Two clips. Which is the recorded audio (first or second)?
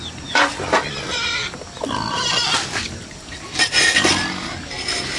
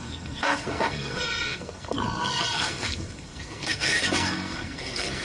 first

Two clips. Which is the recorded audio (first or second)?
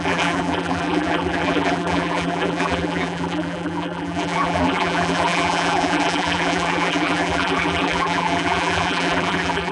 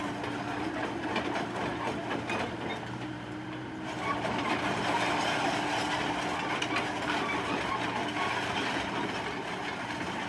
second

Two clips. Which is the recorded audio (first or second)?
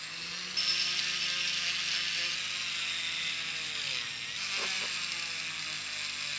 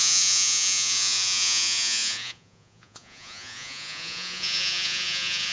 first